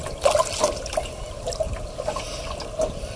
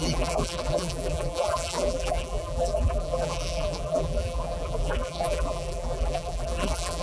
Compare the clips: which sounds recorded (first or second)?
first